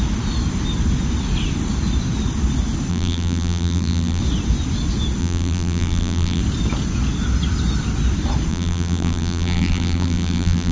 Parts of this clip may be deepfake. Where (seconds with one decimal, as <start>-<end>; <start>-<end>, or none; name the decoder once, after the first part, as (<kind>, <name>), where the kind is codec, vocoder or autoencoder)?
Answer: 2.9-4.2 (vocoder, BigVGAN v2); 5.2-6.4; 8.5-10.7